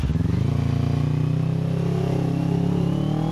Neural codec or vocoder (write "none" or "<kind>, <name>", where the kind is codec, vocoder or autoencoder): none